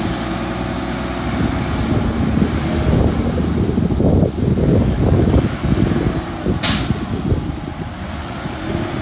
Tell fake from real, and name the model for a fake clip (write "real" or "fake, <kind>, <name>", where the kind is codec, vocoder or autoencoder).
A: real